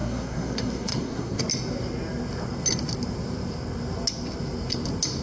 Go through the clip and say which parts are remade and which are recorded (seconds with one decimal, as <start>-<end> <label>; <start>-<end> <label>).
0.0-1.4 remade; 1.4-5.2 recorded